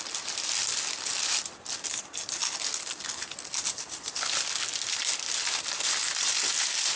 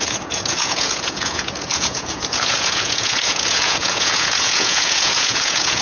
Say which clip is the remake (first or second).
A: second